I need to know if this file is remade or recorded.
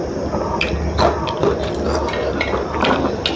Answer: recorded